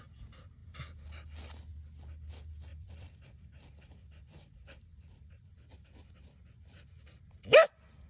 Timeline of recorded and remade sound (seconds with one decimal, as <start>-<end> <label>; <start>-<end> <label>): 0.0-2.7 recorded; 2.7-5.5 remade; 5.5-8.1 recorded